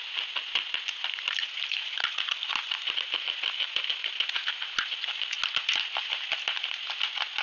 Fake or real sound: real